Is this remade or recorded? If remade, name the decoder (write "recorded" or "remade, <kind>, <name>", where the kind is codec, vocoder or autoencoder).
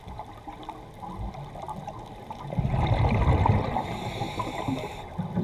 recorded